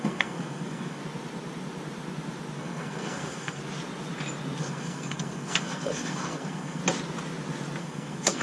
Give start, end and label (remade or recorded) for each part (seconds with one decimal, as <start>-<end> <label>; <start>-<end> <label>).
0.0-1.0 remade; 1.0-2.6 recorded; 2.6-3.6 remade; 3.6-4.6 recorded; 4.6-6.8 remade; 6.8-7.8 recorded; 7.8-8.4 remade